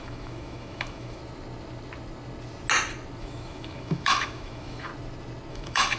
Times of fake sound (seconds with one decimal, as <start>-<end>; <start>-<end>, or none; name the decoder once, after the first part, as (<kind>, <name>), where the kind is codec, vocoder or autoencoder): 0.0-1.2 (autoencoder, DAC-VAE); 3.2-4.9; 5.5-6.0